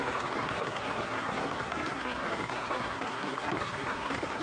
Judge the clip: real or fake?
fake